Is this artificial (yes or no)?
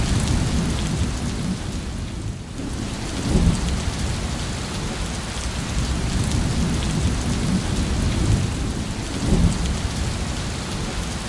no